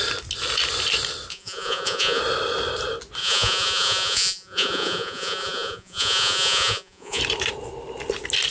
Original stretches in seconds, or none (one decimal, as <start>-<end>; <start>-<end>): 0.0-1.3; 2.2-3.2; 7.2-8.5